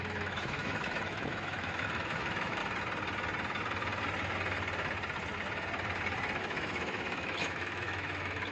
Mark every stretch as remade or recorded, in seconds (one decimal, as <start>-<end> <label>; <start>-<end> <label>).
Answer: 0.0-2.6 remade; 2.6-6.4 recorded; 6.4-8.5 remade